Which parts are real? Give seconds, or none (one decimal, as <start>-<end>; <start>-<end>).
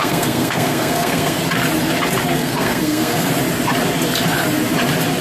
1.4-2.3; 3.3-5.2